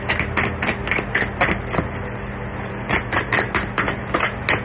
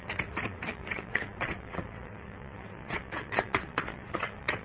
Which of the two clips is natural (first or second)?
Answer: first